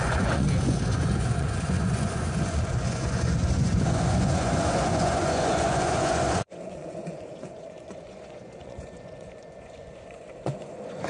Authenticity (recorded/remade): remade